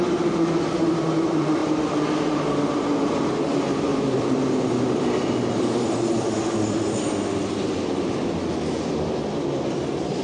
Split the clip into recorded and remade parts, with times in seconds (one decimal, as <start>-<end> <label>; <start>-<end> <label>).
0.0-1.6 remade; 1.6-3.0 recorded; 3.0-8.2 remade; 8.2-8.9 recorded; 8.9-10.2 remade